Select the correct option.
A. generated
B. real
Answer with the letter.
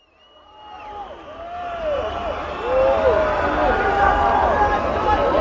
B